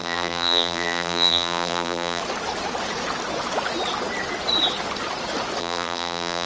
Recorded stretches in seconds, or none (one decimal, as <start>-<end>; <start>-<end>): 2.2-5.6